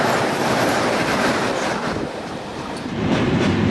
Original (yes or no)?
no